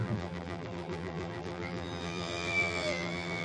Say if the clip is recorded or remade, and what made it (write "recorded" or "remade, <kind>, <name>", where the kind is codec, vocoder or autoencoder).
remade, vocoder, BigVGAN v2